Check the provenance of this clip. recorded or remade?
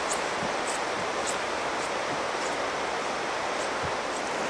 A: recorded